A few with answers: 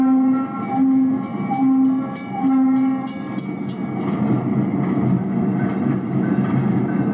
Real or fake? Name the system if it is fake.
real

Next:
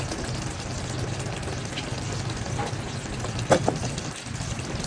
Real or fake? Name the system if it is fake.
real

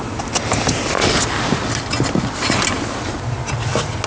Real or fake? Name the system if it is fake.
real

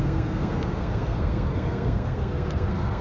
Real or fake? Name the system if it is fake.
fake, codec, SNAC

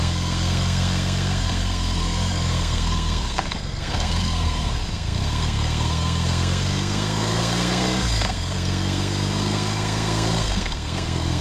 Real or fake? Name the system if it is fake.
fake, codec, SNAC